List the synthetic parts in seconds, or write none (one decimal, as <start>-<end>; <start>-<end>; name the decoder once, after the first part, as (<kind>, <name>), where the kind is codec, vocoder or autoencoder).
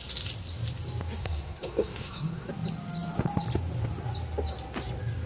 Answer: 1.2-2.5 (codec, SNAC)